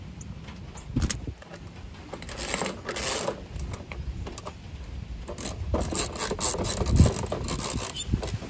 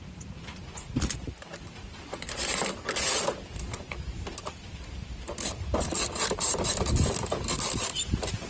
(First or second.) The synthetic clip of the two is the second